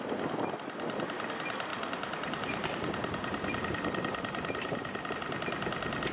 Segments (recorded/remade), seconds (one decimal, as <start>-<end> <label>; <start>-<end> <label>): 0.0-1.7 recorded; 1.7-5.1 remade; 5.1-6.1 recorded